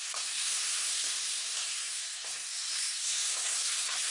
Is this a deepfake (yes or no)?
yes